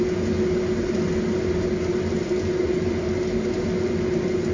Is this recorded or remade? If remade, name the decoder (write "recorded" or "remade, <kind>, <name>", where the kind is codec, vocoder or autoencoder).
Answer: recorded